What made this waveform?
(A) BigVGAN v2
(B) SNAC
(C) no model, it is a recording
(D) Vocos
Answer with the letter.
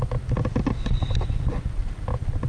C